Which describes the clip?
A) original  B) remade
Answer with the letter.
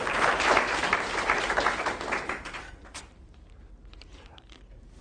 B